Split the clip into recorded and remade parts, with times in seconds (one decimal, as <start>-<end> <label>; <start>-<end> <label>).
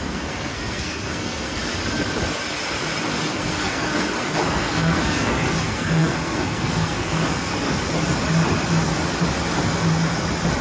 0.0-1.6 remade; 1.6-3.3 recorded; 3.3-7.5 remade; 7.5-10.6 recorded